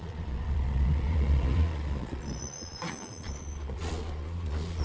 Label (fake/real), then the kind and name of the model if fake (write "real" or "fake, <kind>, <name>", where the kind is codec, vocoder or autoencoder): fake, vocoder, Vocos